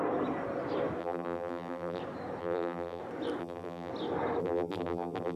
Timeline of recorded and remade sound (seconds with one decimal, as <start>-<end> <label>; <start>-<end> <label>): 0.0-1.0 recorded; 1.0-2.0 remade; 2.0-2.4 recorded; 2.4-3.0 remade; 3.0-3.4 recorded; 3.4-3.9 remade; 3.9-4.4 recorded; 4.4-5.4 remade

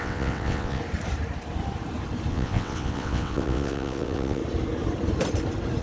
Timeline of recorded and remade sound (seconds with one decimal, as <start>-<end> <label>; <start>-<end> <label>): 0.0-0.8 remade; 0.8-2.3 recorded; 2.3-4.4 remade; 4.4-5.8 recorded

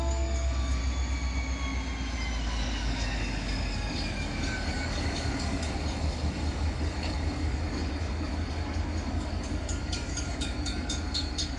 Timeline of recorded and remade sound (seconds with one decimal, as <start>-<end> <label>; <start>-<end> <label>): 0.0-0.8 remade; 0.8-2.4 recorded; 2.4-11.6 remade

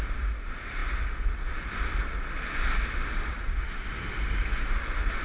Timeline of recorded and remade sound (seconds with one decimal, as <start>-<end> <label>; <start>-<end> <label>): 0.0-5.2 recorded

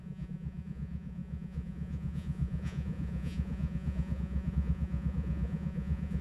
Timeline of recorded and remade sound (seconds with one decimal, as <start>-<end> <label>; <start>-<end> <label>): 0.0-6.2 remade

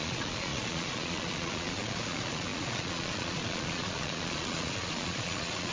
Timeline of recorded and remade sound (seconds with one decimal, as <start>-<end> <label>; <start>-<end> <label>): 0.0-5.7 remade

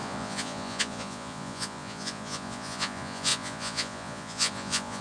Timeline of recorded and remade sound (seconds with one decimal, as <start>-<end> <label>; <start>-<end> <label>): 0.0-5.0 remade